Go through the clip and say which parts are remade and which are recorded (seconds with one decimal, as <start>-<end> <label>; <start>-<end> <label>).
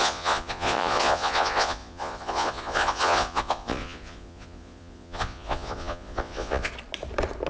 0.0-6.7 remade; 6.7-7.5 recorded